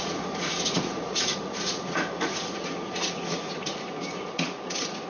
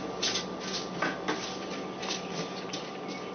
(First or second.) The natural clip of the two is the second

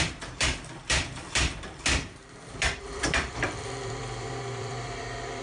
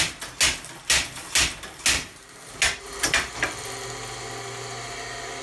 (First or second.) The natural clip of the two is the second